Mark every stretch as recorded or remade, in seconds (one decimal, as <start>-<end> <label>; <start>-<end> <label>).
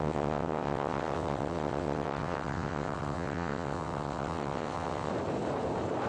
0.0-5.1 remade; 5.1-6.1 recorded